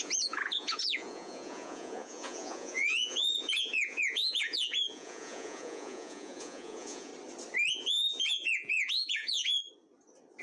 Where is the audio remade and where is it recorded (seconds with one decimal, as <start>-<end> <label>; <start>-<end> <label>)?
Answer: 0.0-7.1 remade; 7.1-7.7 recorded; 7.7-9.6 remade; 9.6-10.4 recorded